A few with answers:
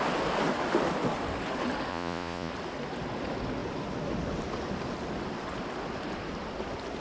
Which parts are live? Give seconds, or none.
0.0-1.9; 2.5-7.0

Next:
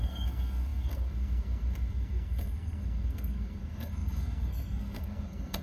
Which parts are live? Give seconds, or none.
none